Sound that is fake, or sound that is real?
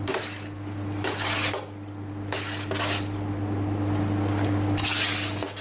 real